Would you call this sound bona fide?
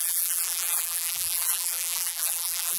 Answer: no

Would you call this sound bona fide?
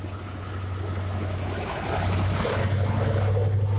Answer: yes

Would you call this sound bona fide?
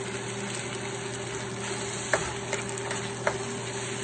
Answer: yes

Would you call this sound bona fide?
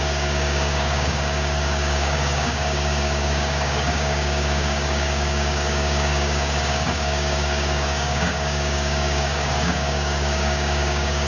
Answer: no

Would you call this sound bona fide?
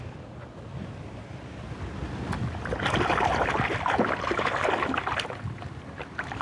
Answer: yes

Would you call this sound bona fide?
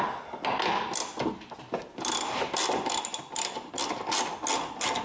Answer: yes